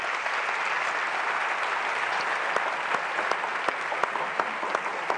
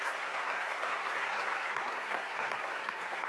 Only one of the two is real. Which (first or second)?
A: first